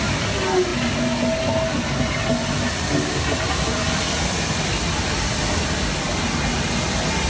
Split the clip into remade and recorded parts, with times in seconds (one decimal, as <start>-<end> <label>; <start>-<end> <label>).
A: 0.0-7.3 recorded